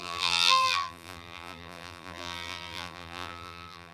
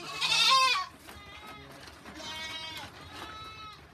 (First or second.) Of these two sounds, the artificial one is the first